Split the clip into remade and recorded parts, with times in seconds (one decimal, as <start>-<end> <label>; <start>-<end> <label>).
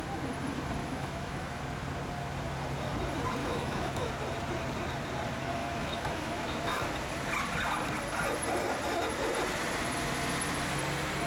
0.0-0.8 recorded; 0.8-1.6 remade; 1.6-3.4 recorded; 3.4-4.1 remade; 4.1-5.6 recorded; 5.6-6.9 remade; 6.9-11.3 recorded